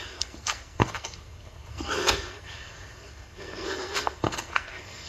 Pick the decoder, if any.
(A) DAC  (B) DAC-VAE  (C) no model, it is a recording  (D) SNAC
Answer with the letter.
D